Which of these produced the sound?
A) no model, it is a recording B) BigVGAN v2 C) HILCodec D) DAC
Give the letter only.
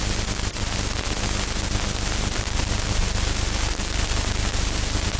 A